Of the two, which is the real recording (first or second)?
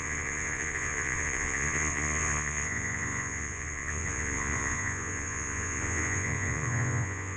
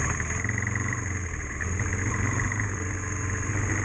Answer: second